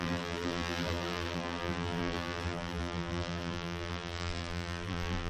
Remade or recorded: remade